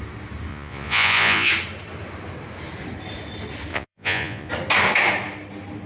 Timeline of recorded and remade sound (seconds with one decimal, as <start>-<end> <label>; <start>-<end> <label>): 0.0-0.5 recorded; 0.5-1.5 remade; 1.5-3.7 recorded; 3.7-4.5 remade; 4.5-5.9 recorded